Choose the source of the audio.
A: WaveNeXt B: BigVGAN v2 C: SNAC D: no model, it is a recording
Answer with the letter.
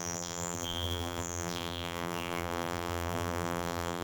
B